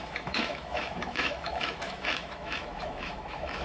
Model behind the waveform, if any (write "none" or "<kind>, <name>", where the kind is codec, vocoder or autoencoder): autoencoder, DAC-VAE